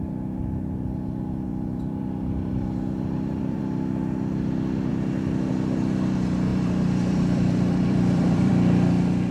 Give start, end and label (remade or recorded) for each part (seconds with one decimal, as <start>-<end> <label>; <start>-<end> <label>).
0.0-1.5 recorded; 1.5-3.6 remade; 3.6-6.5 recorded; 6.5-8.5 remade; 8.5-9.3 recorded